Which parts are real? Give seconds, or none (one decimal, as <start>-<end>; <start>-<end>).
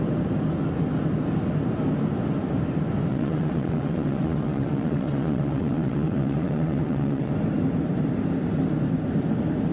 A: 0.0-3.1; 7.3-9.7